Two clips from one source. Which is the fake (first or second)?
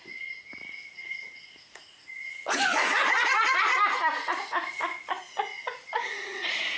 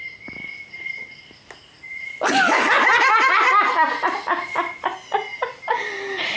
first